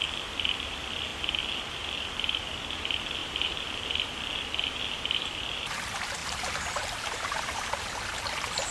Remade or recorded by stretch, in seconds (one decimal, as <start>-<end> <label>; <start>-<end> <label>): 0.0-3.2 recorded; 3.2-3.8 remade; 3.8-6.2 recorded; 6.2-7.8 remade; 7.8-8.7 recorded